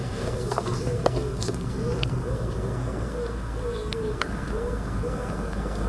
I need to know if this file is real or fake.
fake